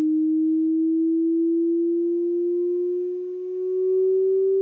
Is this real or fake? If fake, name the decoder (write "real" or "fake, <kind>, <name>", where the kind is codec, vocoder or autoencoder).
fake, autoencoder, DAC-VAE